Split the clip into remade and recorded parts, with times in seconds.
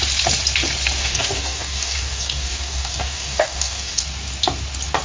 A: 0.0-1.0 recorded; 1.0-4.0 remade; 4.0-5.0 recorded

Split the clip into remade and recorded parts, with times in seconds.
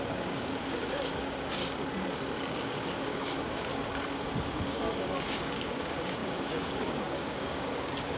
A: 0.0-1.6 remade; 1.6-2.4 recorded; 2.4-3.7 remade; 3.7-4.4 recorded; 4.4-8.2 remade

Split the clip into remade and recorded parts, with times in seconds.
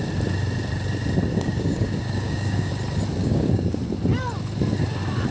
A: 0.0-1.3 recorded; 1.3-2.7 remade; 2.7-3.2 recorded; 3.2-3.8 remade; 3.8-5.3 recorded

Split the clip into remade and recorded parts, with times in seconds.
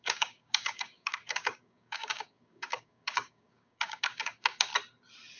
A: 0.0-4.7 remade; 4.7-5.4 recorded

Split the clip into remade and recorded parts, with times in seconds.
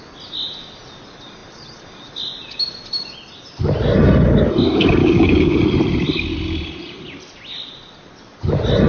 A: 0.0-5.0 recorded; 5.0-5.6 remade; 5.6-8.9 recorded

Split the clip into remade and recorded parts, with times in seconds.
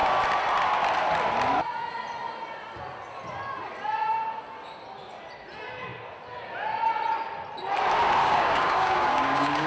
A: 0.0-8.2 recorded; 8.2-9.7 remade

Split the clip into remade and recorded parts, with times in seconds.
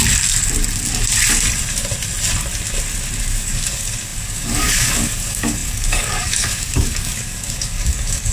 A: 0.0-3.2 recorded; 3.2-8.3 remade